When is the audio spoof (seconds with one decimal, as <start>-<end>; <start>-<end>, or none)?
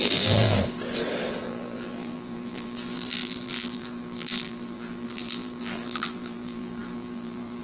0.0-0.6; 1.4-7.6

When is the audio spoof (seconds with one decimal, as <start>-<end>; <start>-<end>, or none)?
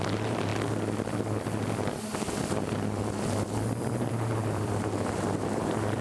0.0-0.5; 4.1-6.0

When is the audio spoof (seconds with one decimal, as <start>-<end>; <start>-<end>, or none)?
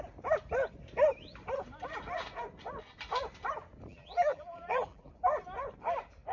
3.9-5.1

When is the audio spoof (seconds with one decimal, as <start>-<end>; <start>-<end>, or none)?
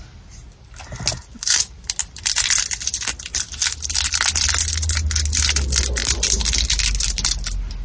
1.1-2.0